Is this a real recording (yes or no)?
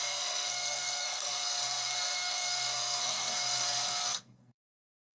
no